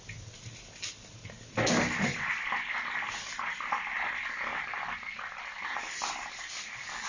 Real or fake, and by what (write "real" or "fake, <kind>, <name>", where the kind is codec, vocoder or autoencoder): real